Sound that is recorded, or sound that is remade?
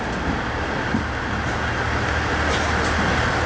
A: recorded